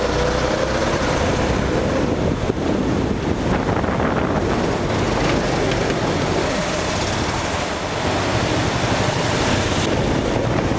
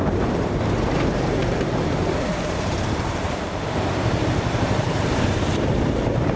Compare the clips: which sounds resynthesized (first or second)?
second